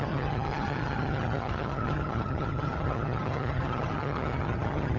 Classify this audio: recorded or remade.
remade